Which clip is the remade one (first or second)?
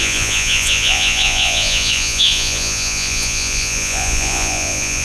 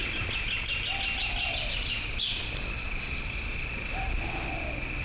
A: first